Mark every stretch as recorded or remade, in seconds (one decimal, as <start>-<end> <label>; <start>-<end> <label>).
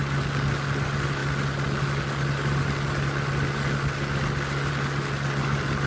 0.0-5.9 recorded